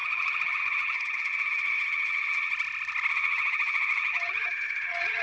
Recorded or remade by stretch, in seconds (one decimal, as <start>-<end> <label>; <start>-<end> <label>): 0.0-2.5 remade; 2.5-3.1 recorded; 3.1-5.2 remade